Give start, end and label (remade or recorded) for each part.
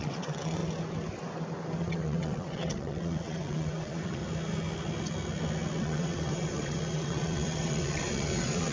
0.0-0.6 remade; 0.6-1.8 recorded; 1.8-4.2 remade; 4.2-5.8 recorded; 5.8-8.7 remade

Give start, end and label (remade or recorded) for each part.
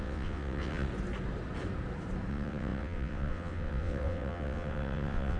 0.0-0.9 remade; 0.9-2.3 recorded; 2.3-5.4 remade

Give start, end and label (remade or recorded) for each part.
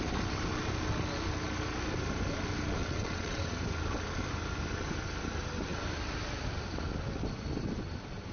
0.0-2.8 recorded; 2.8-3.5 remade; 3.5-8.3 recorded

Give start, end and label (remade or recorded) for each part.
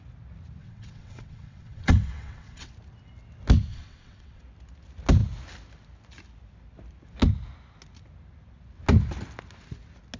0.0-0.6 recorded; 0.6-2.7 remade; 2.7-3.7 recorded; 3.7-4.4 remade; 4.4-10.2 recorded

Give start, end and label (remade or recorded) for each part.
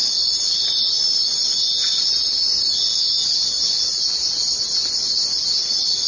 0.0-6.1 recorded